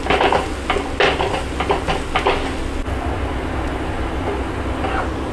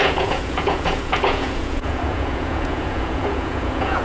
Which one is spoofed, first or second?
second